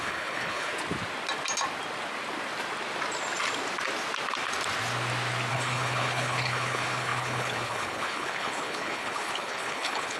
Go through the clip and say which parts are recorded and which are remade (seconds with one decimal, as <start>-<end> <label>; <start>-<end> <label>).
0.0-0.7 remade; 0.7-5.5 recorded; 5.5-10.2 remade